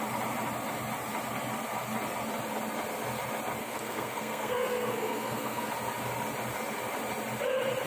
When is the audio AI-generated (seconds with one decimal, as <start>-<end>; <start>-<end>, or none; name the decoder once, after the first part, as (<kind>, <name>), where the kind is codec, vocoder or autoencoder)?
3.6-5.7 (codec, SNAC)